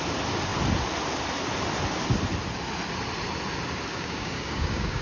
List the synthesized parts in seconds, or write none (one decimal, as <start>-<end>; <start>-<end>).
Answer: 3.9-5.0